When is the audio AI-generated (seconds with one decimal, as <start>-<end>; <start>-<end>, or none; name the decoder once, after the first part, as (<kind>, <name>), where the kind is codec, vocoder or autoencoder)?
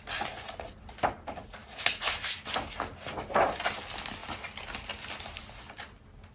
none